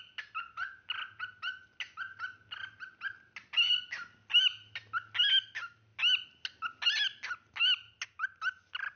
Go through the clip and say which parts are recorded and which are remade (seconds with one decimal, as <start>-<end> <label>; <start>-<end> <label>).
0.0-9.0 recorded

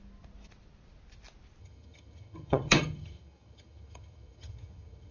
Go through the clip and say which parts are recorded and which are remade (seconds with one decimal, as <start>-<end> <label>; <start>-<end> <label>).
0.0-1.6 recorded; 1.6-5.1 remade